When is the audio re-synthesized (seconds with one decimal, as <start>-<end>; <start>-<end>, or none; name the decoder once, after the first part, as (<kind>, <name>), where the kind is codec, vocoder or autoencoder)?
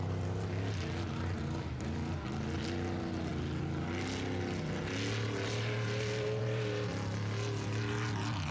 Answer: none